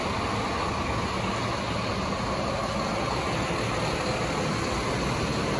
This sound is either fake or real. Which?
real